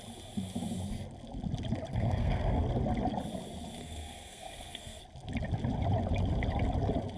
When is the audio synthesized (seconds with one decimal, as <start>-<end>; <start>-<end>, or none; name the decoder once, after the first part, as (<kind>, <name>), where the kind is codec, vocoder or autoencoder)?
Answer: 1.9-2.6 (codec, SNAC); 3.8-5.0